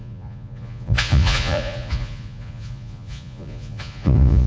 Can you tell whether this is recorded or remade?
remade